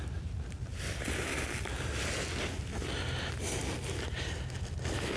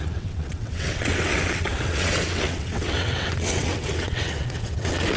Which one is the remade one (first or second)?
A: second